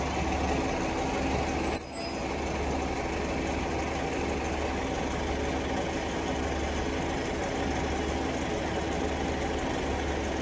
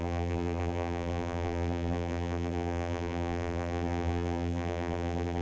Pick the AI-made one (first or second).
second